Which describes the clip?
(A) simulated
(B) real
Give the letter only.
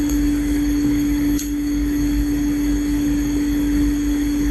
A